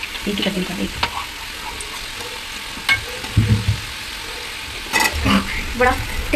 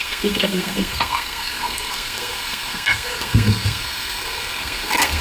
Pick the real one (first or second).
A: first